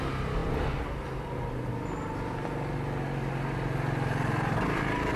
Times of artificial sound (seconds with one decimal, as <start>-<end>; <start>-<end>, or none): none